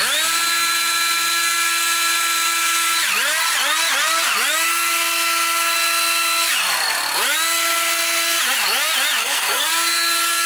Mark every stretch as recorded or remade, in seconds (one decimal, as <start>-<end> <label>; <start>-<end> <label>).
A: 0.0-9.2 recorded; 9.2-9.7 remade; 9.7-10.5 recorded